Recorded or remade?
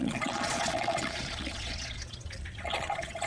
remade